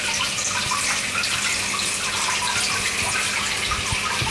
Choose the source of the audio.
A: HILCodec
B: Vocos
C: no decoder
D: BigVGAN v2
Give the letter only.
C